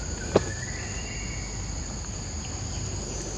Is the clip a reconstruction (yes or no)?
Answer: no